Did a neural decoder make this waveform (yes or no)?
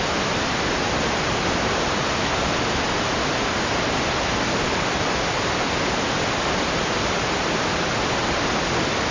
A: no